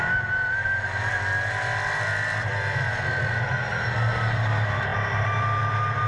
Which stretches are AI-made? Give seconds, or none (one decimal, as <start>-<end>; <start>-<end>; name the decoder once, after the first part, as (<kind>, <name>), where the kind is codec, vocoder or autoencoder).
none